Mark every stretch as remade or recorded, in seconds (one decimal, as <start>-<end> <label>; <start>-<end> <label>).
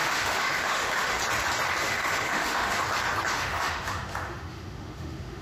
0.0-1.2 remade; 1.2-1.8 recorded; 1.8-2.8 remade; 2.8-3.3 recorded; 3.3-5.4 remade